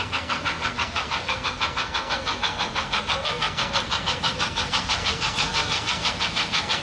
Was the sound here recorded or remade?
remade